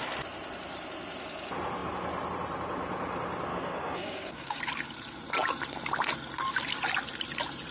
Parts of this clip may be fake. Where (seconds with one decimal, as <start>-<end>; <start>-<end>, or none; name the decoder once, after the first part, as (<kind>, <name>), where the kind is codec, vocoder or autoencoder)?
3.5-4.6 (codec, DAC)